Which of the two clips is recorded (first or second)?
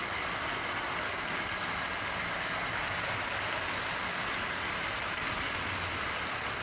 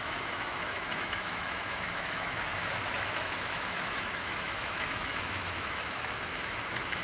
first